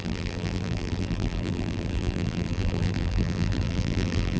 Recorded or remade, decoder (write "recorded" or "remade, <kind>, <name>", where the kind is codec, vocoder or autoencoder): remade, vocoder, BigVGAN v2